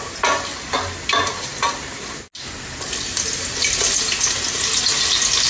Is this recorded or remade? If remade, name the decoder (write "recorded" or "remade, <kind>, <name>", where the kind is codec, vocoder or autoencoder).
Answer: recorded